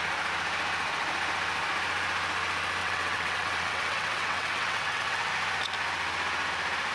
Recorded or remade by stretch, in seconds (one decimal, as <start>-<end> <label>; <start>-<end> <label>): 0.0-2.8 recorded; 2.8-5.3 remade; 5.3-6.9 recorded